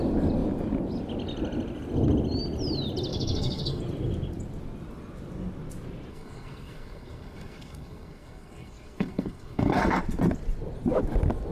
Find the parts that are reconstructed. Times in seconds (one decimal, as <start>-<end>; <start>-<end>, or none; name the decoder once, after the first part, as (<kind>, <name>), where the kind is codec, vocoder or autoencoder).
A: 3.1-3.8 (codec, SNAC); 6.1-10.0